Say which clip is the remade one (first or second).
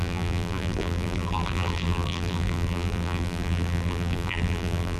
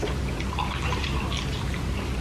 first